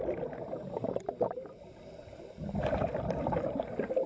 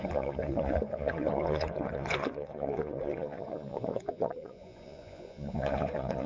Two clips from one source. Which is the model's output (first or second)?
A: second